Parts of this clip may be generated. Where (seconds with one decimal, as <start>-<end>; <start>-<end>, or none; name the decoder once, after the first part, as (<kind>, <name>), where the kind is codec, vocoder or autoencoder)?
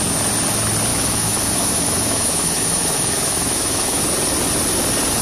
0.9-4.0 (autoencoder, DAC-VAE)